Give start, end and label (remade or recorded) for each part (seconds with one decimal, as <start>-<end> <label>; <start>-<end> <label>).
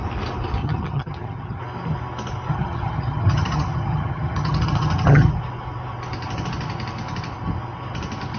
0.0-0.6 recorded; 0.6-1.6 remade; 1.6-2.5 recorded; 2.5-5.3 remade; 5.3-8.4 recorded